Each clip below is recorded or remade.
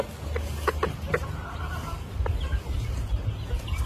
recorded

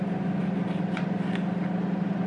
recorded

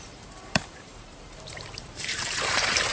remade